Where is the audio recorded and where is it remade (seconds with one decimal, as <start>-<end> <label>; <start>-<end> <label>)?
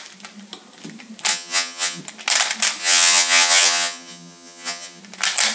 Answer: 0.0-1.3 recorded; 1.3-2.0 remade; 2.0-2.8 recorded; 2.8-5.0 remade; 5.0-5.5 recorded